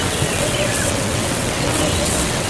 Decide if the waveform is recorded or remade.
remade